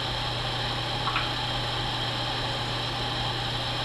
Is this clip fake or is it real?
real